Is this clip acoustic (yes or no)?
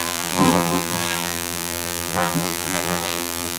no